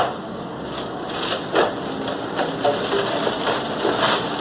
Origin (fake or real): real